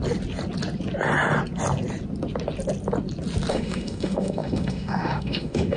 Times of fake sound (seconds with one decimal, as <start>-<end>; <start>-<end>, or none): 3.5-5.8